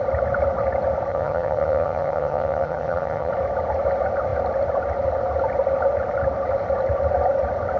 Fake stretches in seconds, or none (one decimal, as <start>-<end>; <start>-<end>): 1.1-3.3